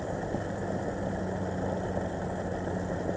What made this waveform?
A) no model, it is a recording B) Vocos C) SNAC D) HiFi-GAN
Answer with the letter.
A